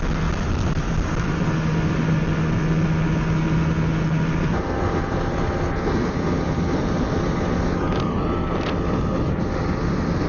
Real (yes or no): yes